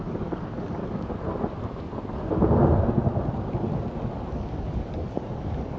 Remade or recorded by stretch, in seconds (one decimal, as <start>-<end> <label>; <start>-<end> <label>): 0.0-0.8 remade; 0.8-4.3 recorded; 4.3-5.8 remade